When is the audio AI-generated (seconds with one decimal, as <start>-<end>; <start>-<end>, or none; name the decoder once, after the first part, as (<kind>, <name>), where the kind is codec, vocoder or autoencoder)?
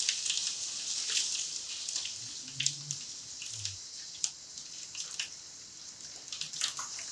none